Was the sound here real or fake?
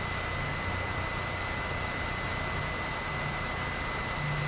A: real